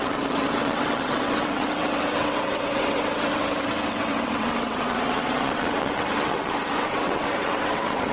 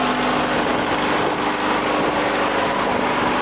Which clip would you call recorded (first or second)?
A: second